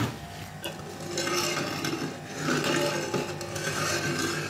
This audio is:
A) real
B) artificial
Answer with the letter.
A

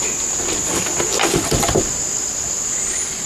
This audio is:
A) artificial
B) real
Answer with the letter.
B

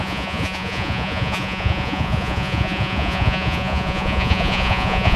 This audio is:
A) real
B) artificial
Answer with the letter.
B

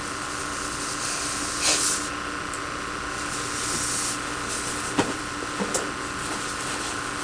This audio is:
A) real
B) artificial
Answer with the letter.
A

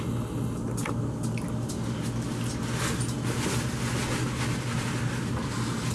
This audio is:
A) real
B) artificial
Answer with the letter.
A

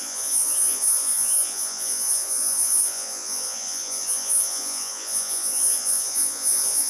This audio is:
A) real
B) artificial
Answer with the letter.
B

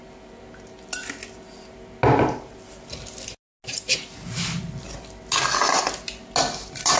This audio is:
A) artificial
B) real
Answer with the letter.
B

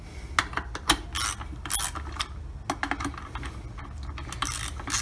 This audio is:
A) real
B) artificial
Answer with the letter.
A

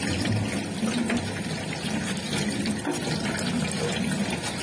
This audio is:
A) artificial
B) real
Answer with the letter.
B